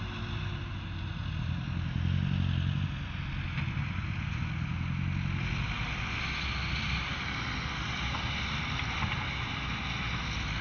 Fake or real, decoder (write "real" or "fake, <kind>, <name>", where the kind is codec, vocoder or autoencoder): real